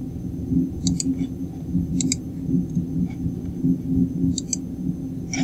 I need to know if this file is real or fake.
real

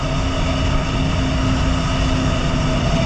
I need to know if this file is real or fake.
real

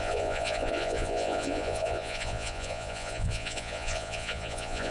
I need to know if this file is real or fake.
fake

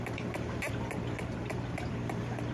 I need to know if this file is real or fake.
fake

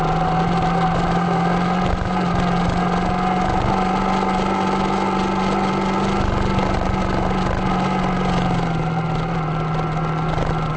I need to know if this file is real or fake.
real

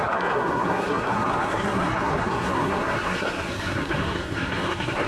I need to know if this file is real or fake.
fake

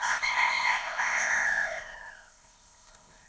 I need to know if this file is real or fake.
fake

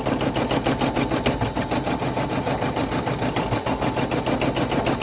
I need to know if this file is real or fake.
real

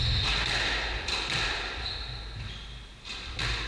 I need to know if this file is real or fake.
real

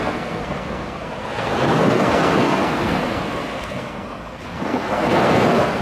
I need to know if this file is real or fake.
fake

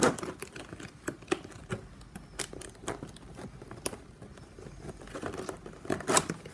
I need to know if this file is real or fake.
real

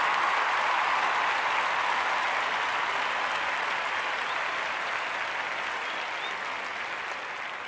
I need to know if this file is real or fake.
real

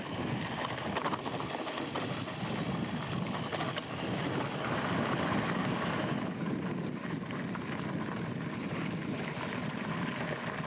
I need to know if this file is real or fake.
real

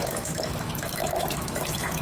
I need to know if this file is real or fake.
fake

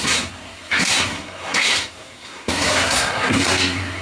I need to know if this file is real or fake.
fake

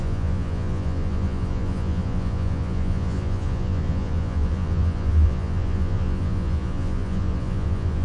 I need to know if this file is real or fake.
fake